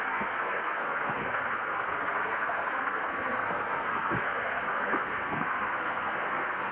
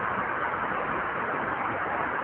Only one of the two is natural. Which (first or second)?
second